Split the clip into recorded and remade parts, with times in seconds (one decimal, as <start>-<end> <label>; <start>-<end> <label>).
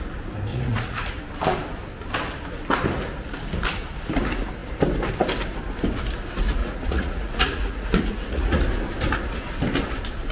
0.0-0.5 recorded; 0.5-1.2 remade; 1.2-6.6 recorded; 6.6-8.6 remade; 8.6-10.3 recorded